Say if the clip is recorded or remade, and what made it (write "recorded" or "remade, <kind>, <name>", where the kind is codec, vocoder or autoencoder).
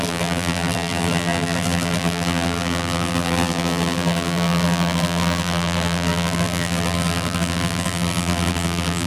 remade, vocoder, BigVGAN v2